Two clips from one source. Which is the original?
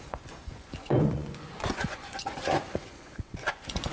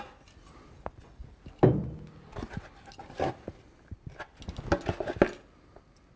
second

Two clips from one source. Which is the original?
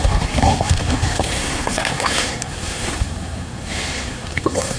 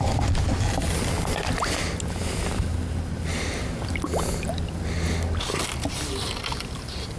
second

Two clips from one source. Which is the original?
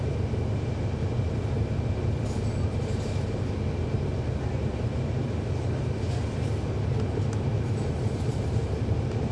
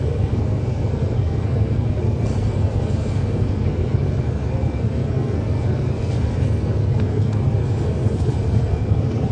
first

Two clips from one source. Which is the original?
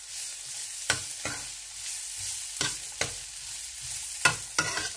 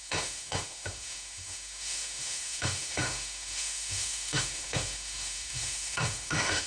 first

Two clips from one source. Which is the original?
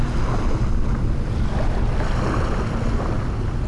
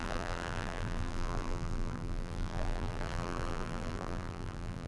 first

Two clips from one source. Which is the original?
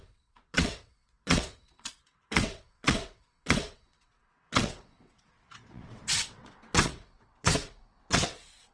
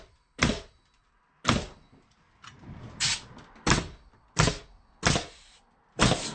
second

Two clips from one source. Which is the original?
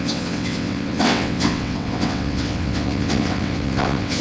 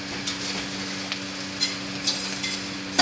second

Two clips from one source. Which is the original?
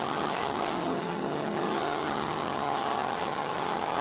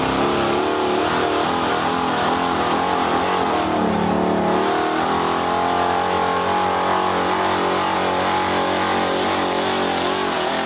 second